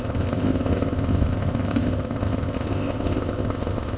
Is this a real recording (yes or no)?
no